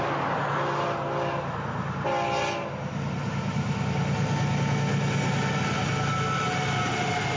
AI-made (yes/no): no